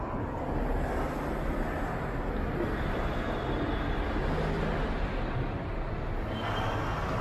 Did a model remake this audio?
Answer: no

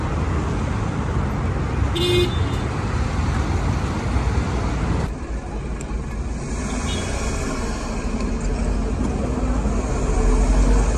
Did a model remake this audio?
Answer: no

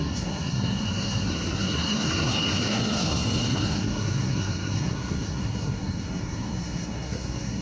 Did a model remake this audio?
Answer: yes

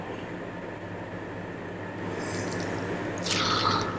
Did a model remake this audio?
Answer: no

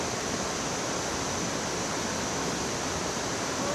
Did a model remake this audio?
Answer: no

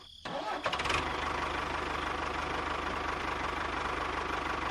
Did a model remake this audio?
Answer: no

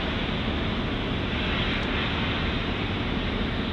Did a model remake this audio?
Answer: no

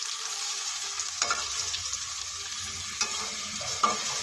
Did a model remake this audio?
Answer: no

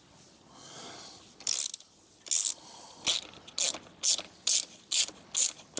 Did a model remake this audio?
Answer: no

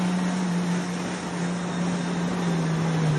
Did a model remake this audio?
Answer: no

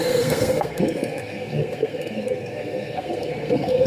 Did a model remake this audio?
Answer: yes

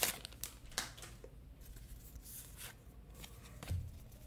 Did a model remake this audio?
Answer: no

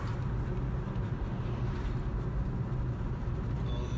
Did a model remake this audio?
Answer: no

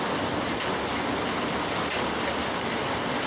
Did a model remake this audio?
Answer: no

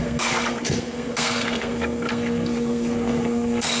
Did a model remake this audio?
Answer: yes